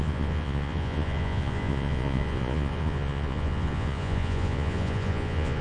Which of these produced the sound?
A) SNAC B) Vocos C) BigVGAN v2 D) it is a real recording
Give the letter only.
B